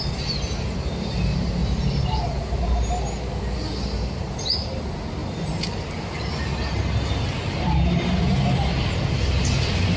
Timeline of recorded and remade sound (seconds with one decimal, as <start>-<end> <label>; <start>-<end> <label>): 0.0-1.6 recorded; 1.6-2.2 remade; 2.2-5.2 recorded; 5.2-6.3 remade; 6.3-10.0 recorded